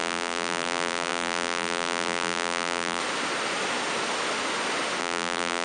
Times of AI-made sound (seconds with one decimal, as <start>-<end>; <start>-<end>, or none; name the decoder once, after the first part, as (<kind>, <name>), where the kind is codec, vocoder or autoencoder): 0.0-3.0 (vocoder, BigVGAN v2); 5.0-5.6